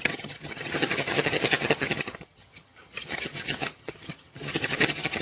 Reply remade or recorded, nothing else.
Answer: remade